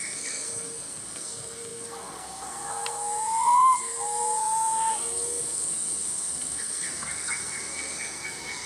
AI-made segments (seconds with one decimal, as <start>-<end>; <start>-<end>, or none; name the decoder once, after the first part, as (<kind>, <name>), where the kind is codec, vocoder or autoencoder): 0.0-8.7 (codec, SNAC)